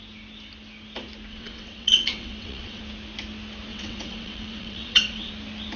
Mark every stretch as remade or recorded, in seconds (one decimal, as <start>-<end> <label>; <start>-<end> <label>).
0.0-1.3 recorded; 1.3-2.8 remade; 2.8-3.7 recorded; 3.7-5.3 remade; 5.3-5.8 recorded